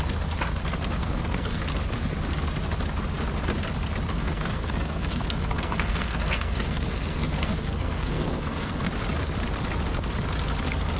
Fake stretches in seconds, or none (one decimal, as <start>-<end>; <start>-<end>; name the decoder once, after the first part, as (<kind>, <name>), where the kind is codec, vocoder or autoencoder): 1.0-1.6 (codec, SNAC); 4.2-8.9